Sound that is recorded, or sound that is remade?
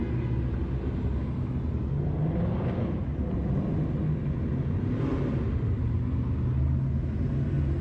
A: recorded